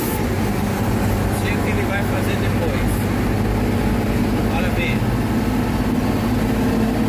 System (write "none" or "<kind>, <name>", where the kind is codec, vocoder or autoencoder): none